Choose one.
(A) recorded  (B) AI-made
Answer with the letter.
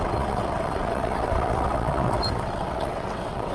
B